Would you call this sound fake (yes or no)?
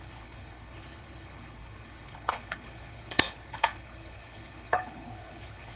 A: yes